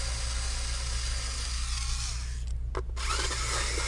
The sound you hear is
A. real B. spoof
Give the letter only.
A